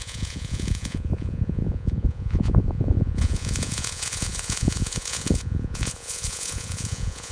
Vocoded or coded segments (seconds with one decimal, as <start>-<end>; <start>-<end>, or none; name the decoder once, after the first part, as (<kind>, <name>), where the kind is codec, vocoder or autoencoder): 0.0-7.3 (vocoder, Vocos)